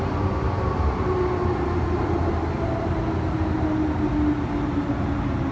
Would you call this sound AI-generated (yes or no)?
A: no